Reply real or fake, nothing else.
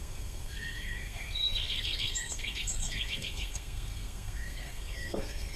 fake